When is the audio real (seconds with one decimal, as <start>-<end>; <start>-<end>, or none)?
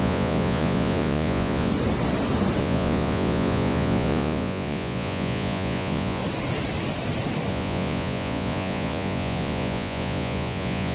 1.7-2.6; 6.2-7.5